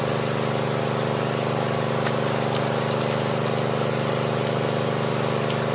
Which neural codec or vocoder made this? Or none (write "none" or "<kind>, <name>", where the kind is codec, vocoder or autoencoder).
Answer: none